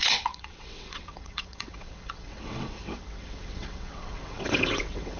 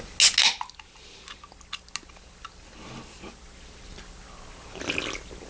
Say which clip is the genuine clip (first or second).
second